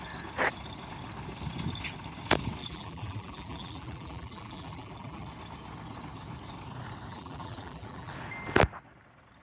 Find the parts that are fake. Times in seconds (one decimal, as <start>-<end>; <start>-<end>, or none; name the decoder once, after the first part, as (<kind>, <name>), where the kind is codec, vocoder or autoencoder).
2.6-5.3 (vocoder, BigVGAN v2); 7.1-8.1